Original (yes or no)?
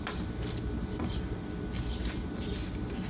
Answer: yes